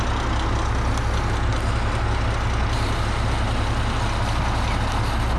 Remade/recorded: recorded